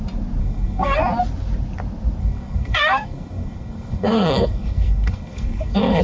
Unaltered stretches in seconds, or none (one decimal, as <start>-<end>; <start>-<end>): 0.0-0.4; 1.0-2.2